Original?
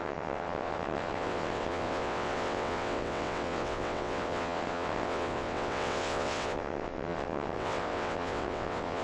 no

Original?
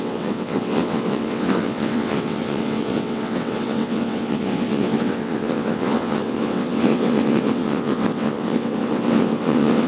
no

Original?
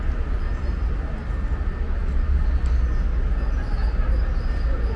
yes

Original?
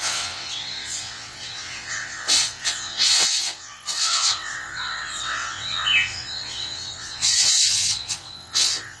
no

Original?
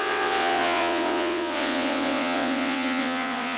no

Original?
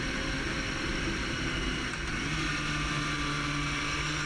yes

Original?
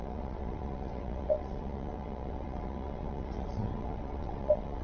no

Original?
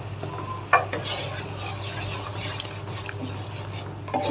yes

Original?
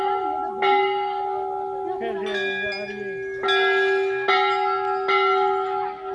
yes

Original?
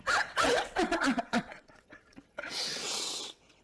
no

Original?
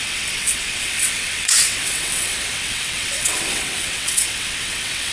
no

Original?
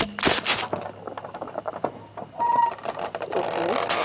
yes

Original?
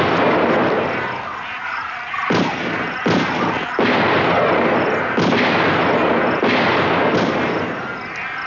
yes